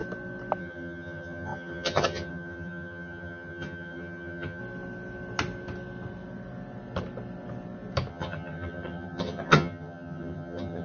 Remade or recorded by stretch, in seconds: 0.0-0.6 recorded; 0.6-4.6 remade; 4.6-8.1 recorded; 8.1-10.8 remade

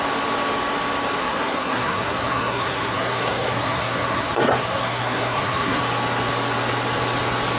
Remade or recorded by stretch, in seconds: 0.0-1.2 recorded; 1.2-5.8 remade; 5.8-7.6 recorded

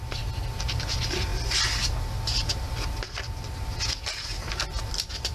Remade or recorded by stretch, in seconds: 0.0-5.3 recorded

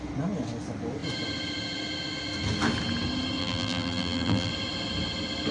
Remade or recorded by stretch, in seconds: 0.0-3.4 recorded; 3.4-4.5 remade; 4.5-5.5 recorded

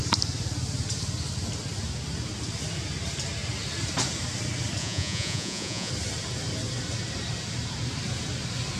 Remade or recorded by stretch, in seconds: 0.0-4.8 recorded; 4.8-5.9 remade; 5.9-8.8 recorded